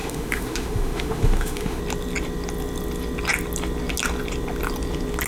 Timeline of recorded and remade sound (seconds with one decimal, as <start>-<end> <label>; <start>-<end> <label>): 0.0-1.8 remade; 1.8-5.3 recorded